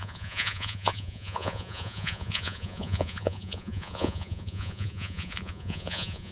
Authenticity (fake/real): fake